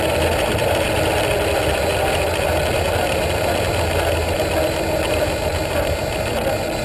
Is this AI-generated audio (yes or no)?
no